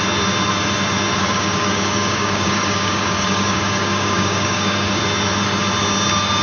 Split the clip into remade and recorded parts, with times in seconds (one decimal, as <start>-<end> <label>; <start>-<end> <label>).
0.0-1.2 recorded; 1.2-5.0 remade; 5.0-6.4 recorded